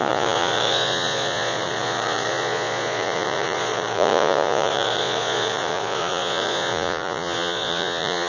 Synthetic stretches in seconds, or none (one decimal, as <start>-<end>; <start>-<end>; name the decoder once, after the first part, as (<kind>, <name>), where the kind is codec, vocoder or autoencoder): 0.0-8.3 (vocoder, Vocos)